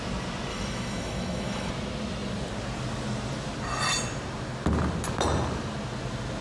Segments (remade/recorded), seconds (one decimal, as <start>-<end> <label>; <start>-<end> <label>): 0.0-0.5 recorded; 0.5-1.7 remade; 1.7-6.4 recorded